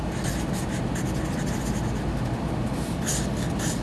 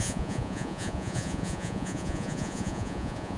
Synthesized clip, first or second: second